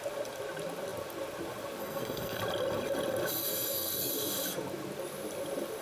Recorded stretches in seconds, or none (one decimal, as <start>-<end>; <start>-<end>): 0.0-1.8; 2.4-3.4; 4.1-5.8